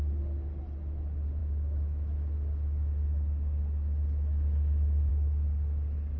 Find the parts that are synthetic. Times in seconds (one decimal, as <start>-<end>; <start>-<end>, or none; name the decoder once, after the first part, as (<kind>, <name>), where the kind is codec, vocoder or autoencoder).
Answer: none